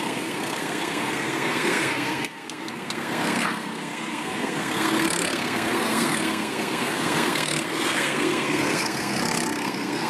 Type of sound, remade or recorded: remade